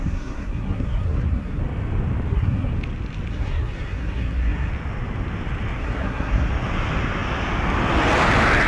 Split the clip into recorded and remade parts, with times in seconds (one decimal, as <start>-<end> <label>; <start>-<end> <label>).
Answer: 0.0-1.6 remade; 1.6-2.3 recorded; 2.3-2.7 remade; 2.7-3.3 recorded; 3.3-4.7 remade; 4.7-5.8 recorded; 5.8-6.5 remade; 6.5-8.7 recorded

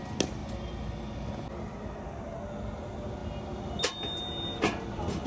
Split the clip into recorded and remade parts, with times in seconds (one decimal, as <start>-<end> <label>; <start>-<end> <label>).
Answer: 0.0-5.3 recorded

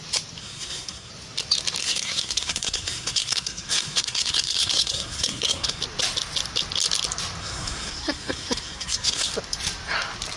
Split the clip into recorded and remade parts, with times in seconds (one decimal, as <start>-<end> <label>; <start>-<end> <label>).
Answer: 0.0-0.4 recorded; 0.4-1.1 remade; 1.1-1.8 recorded; 1.8-5.8 remade; 5.8-7.4 recorded; 7.4-9.3 remade; 9.3-10.4 recorded

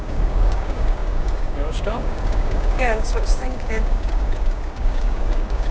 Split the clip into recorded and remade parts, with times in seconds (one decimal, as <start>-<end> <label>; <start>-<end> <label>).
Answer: 0.0-5.7 remade

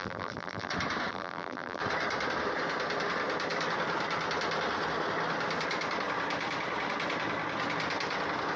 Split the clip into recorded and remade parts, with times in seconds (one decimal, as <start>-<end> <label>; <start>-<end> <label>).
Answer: 0.0-0.7 remade; 0.7-1.1 recorded; 1.1-1.8 remade; 1.8-8.6 recorded

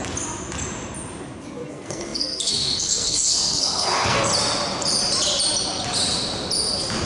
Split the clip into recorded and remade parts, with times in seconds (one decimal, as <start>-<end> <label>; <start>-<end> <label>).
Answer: 0.0-1.7 recorded; 1.7-4.3 remade; 4.3-7.1 recorded